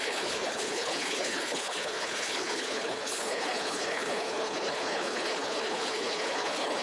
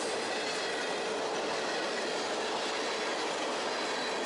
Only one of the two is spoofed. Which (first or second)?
first